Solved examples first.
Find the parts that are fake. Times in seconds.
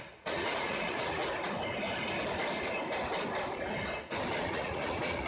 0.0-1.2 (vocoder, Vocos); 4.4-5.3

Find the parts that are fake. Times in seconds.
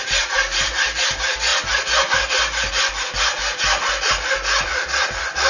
none